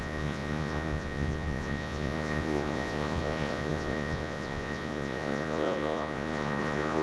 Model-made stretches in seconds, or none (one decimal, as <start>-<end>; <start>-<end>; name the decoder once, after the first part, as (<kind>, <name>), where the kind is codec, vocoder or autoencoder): 0.0-7.0 (vocoder, Vocos)